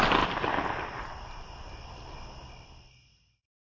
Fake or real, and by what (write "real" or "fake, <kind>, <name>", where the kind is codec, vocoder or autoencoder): real